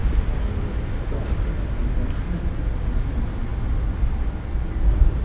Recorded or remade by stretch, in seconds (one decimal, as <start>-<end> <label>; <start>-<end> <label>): 0.0-5.2 recorded